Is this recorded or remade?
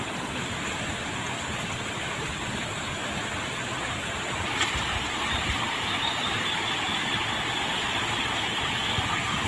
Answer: recorded